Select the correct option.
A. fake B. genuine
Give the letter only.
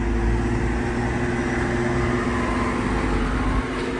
B